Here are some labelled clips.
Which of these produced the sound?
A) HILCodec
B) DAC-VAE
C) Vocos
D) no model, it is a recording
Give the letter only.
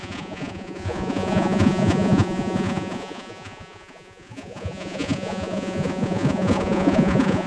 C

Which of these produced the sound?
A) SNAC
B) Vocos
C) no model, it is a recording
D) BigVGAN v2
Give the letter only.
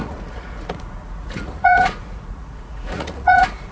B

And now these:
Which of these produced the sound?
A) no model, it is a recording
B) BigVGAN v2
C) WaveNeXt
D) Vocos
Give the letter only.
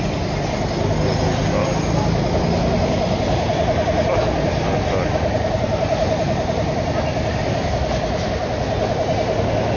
A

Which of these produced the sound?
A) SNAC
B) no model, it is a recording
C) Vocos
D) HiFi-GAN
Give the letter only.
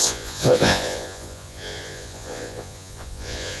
C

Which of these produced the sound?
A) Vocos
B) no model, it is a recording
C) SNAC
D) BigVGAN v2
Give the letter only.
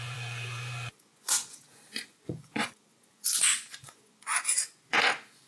A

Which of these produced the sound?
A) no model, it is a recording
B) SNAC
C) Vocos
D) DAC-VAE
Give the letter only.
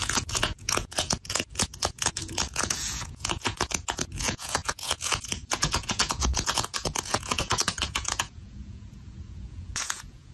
C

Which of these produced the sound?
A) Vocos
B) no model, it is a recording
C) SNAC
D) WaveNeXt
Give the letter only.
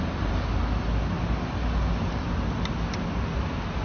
B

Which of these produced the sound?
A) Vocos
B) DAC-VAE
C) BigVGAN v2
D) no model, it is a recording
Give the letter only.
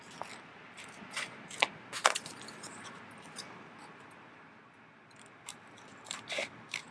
D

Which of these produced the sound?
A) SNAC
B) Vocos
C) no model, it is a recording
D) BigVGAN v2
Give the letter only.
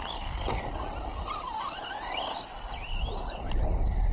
C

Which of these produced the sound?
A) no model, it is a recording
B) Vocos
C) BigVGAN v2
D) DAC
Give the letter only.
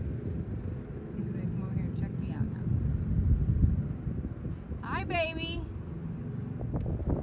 A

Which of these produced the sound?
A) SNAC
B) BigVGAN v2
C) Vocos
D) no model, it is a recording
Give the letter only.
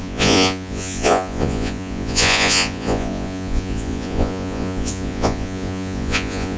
C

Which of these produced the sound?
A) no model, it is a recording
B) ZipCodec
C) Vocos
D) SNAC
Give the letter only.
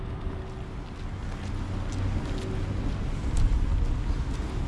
A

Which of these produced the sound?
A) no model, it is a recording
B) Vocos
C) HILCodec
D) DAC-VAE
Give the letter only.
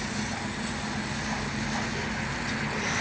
A